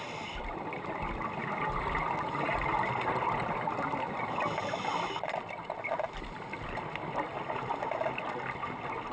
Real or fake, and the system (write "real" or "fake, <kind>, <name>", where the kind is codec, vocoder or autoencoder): real